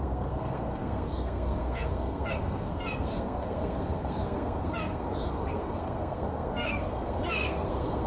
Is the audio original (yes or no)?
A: no